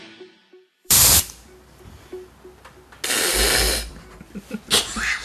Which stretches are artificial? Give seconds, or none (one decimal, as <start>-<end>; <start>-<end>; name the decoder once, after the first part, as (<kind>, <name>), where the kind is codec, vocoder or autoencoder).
0.4-1.0 (vocoder, BigVGAN v2)